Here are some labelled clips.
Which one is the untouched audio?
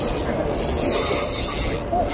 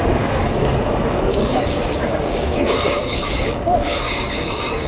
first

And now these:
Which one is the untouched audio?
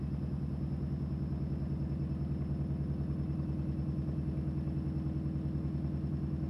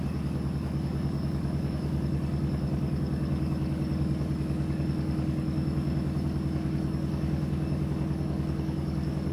first